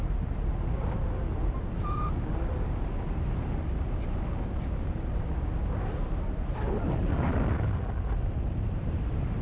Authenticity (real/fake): real